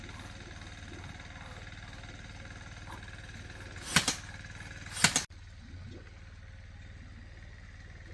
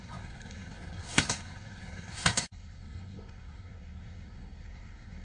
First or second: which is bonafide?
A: first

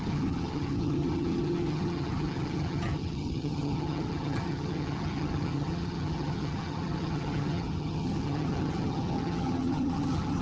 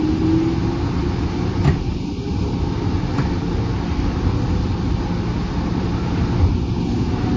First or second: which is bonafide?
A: second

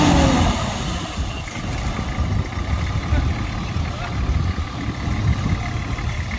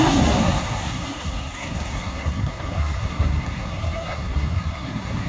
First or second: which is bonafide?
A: first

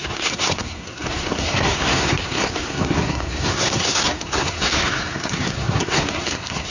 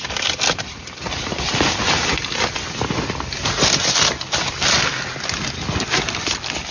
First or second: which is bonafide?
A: second